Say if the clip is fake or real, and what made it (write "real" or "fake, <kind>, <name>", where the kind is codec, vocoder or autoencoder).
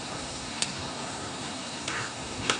fake, codec, SNAC